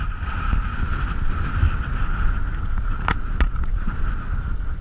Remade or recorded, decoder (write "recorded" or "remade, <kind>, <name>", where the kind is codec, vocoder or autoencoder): recorded